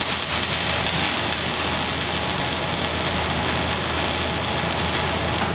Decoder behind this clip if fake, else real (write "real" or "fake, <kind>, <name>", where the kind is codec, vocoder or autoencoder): real